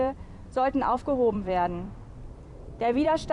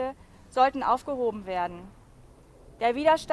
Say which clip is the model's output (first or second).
first